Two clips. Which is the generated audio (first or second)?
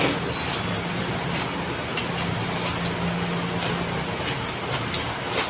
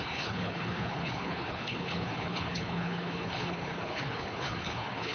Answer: second